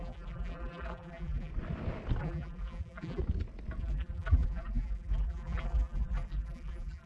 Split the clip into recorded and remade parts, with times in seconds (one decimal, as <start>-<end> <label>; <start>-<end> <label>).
0.0-1.5 remade; 1.5-2.2 recorded; 2.2-3.2 remade; 3.2-3.8 recorded; 3.8-7.1 remade